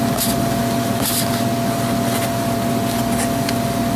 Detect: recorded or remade recorded